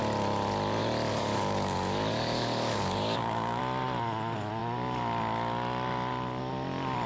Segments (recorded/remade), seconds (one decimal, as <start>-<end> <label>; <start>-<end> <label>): 0.0-1.1 recorded; 1.1-3.6 remade; 3.6-7.1 recorded